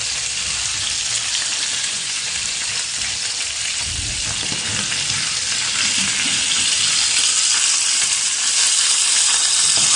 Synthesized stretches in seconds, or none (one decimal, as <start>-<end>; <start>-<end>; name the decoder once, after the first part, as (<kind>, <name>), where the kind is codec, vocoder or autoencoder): 1.8-2.3 (vocoder, Vocos)